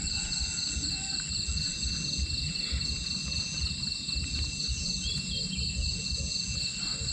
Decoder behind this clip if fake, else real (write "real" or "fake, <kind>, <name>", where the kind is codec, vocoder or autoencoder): real